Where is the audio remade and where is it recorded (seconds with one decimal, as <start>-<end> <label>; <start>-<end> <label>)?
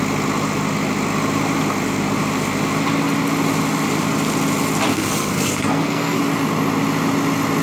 0.0-4.9 recorded; 4.9-6.2 remade; 6.2-7.6 recorded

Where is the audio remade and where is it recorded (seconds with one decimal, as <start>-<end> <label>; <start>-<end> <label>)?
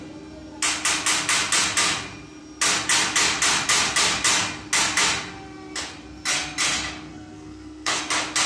0.0-7.1 recorded; 7.1-8.0 remade; 8.0-8.5 recorded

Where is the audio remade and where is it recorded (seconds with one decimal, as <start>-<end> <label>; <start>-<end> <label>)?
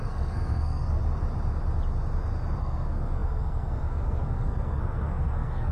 0.0-1.0 remade; 1.0-2.6 recorded; 2.6-5.7 remade